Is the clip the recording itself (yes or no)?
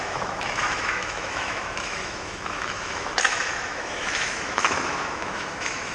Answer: no